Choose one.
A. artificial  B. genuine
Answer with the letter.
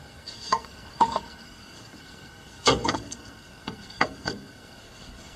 A